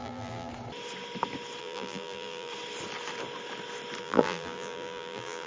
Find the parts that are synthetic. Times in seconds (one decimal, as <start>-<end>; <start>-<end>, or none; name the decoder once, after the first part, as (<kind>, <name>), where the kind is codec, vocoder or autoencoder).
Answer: 0.0-0.5 (vocoder, BigVGAN v2); 1.6-2.5; 4.0-5.5